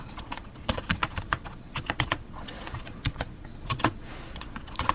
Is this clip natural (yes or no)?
no